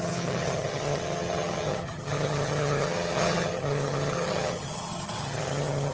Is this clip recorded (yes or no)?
no